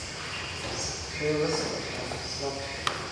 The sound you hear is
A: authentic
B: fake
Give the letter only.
A